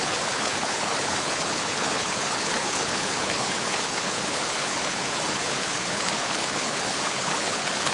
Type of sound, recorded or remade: remade